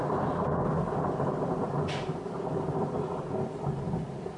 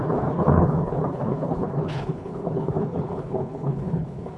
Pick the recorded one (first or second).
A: first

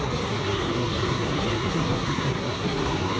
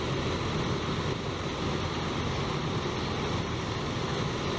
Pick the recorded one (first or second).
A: second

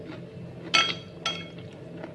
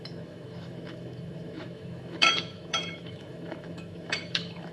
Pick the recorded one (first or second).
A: first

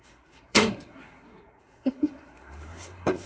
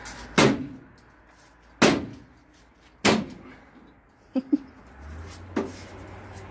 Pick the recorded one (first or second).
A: second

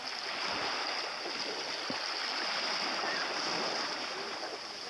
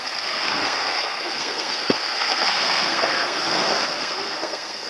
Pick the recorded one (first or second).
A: first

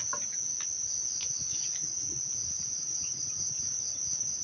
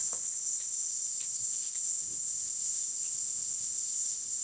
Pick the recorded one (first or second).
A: first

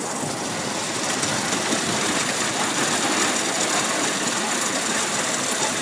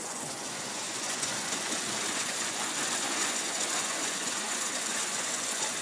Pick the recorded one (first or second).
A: first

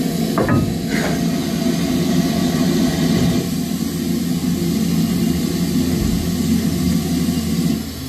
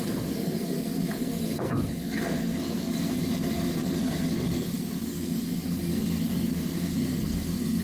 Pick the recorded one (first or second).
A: first